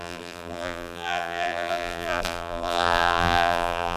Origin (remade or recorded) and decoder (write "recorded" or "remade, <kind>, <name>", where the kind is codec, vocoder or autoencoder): remade, vocoder, BigVGAN v2